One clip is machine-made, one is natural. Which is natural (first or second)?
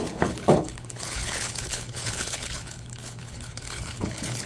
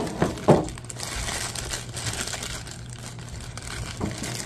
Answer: second